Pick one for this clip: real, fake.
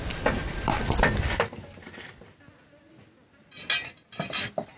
real